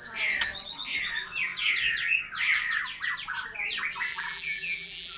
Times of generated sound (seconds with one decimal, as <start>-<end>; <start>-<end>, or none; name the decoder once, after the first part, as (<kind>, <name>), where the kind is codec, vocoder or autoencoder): 4.1-5.2 (vocoder, BigVGAN v2)